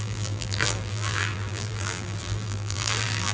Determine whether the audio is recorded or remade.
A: remade